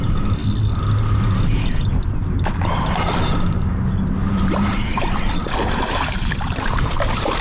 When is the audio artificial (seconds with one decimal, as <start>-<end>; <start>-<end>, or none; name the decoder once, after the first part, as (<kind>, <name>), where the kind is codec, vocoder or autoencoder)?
0.0-0.4 (vocoder, BigVGAN v2); 1.9-3.7; 4.3-7.4